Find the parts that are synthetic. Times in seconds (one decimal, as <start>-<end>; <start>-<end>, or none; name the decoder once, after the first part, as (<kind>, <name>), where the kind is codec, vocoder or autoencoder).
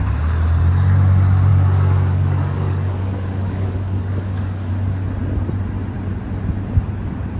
1.5-4.7 (codec, DAC)